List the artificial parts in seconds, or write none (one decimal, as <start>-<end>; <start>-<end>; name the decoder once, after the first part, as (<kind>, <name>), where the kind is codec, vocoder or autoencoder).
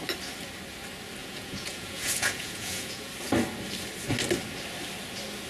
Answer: 1.2-3.1 (vocoder, Vocos)